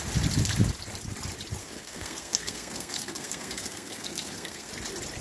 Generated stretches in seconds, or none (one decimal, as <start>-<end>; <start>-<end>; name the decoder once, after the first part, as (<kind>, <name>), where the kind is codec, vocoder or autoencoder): 1.6-4.7 (codec, SNAC)